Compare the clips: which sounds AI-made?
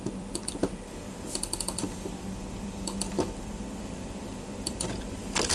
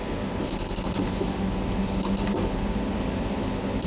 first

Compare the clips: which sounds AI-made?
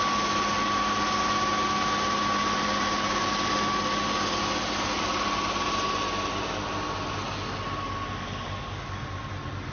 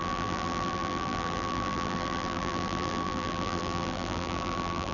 second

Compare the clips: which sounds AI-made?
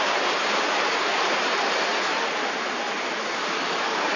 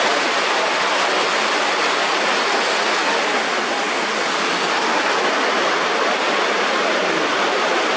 first